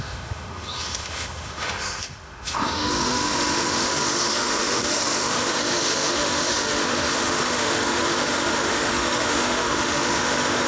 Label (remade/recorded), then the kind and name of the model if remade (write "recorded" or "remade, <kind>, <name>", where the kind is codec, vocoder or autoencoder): remade, autoencoder, DAC-VAE